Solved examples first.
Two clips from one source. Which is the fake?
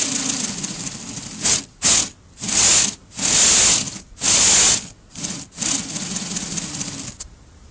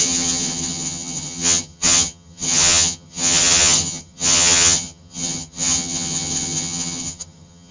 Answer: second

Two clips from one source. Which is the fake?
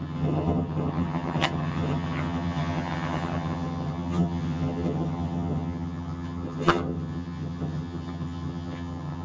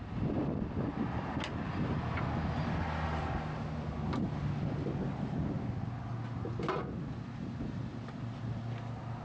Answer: first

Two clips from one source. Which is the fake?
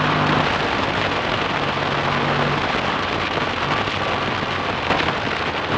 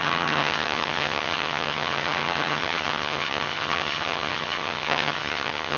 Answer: second